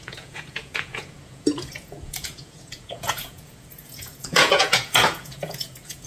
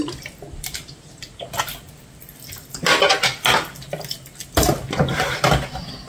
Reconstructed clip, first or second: first